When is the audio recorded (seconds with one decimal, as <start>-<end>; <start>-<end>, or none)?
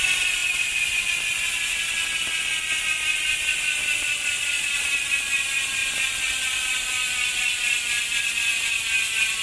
0.0-0.4; 1.0-5.8; 8.7-9.4